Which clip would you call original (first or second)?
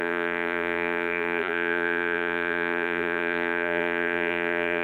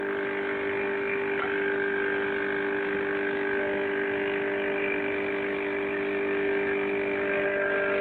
second